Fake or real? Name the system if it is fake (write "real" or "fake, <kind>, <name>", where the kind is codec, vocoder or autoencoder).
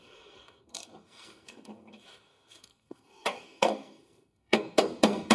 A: fake, codec, SNAC